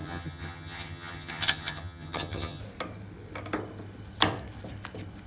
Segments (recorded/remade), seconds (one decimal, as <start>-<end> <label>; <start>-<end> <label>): 0.0-2.6 remade; 2.6-5.3 recorded